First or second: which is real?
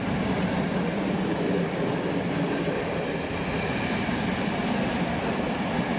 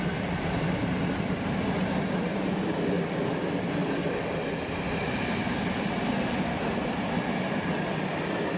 second